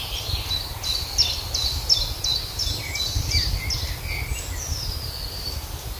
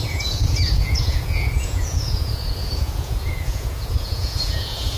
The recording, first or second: first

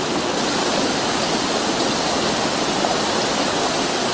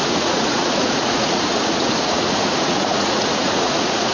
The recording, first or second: first